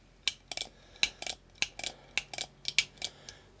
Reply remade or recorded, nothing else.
recorded